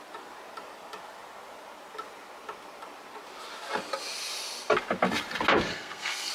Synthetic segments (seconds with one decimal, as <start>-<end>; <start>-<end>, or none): 5.7-6.3